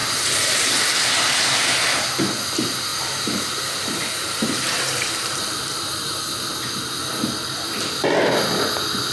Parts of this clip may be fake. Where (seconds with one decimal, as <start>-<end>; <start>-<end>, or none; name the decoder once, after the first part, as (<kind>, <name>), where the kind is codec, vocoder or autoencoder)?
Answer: 0.0-0.8 (vocoder, BigVGAN v2); 2.9-6.0